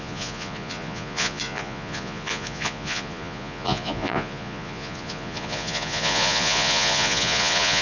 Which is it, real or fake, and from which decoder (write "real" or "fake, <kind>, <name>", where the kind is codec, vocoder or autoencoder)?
fake, vocoder, Vocos